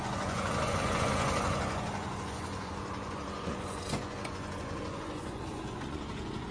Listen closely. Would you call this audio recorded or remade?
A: remade